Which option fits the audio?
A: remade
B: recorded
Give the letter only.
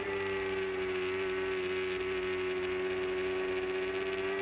B